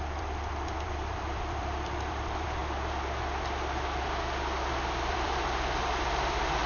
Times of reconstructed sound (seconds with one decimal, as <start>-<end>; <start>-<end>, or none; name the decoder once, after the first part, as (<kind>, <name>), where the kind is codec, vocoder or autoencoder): 0.0-2.6 (vocoder, BigVGAN v2); 5.1-6.7